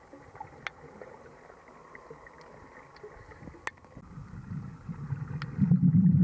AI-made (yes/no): no